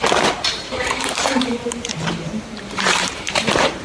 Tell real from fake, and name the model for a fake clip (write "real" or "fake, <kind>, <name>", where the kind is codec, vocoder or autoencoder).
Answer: fake, vocoder, BigVGAN v2